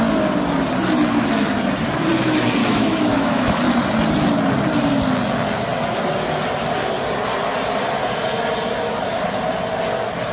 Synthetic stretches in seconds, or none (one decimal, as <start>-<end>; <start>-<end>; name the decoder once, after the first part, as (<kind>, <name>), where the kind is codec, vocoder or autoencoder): 2.6-3.6 (autoencoder, DAC-VAE)